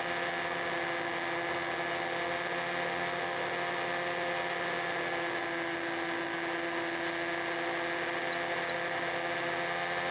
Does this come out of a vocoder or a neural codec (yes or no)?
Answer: no